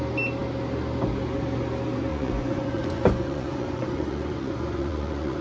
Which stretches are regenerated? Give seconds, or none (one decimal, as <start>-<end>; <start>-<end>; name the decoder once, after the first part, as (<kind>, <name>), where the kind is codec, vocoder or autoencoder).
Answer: 2.1-5.4 (vocoder, Vocos)